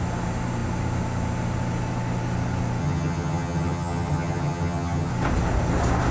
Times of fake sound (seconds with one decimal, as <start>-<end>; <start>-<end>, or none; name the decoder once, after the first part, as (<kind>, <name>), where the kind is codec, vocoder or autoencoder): 2.8-5.1 (vocoder, HiFi-GAN)